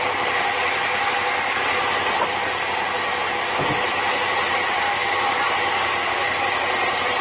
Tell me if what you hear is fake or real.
real